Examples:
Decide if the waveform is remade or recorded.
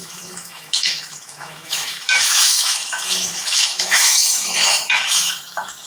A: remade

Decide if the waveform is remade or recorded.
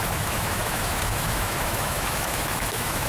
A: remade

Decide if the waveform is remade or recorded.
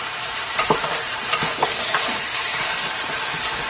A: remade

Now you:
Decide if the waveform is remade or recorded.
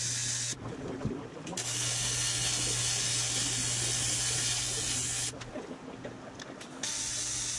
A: recorded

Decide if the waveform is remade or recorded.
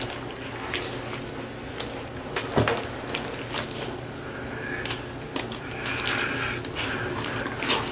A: recorded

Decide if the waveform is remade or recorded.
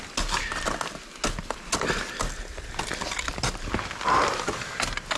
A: recorded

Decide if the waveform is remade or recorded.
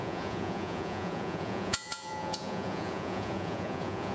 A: remade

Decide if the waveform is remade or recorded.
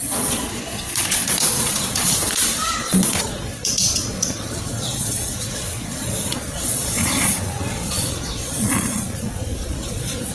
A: remade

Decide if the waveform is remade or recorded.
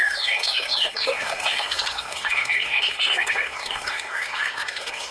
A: remade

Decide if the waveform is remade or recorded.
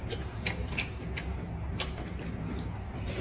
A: recorded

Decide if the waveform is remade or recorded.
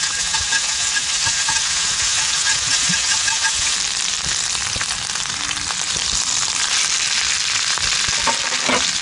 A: recorded